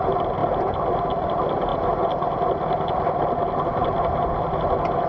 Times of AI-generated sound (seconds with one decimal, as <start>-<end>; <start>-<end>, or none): none